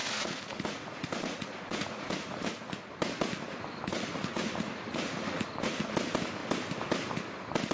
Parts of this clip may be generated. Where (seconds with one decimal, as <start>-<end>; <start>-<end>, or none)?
0.0-2.6; 3.9-5.9